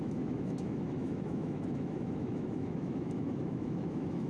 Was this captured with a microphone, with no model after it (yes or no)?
no